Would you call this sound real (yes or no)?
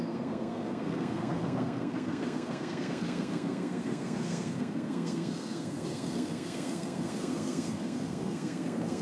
no